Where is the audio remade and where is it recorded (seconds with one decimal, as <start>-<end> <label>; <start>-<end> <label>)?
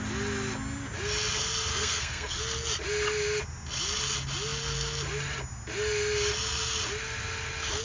0.0-1.7 recorded; 1.7-2.4 remade; 2.4-7.8 recorded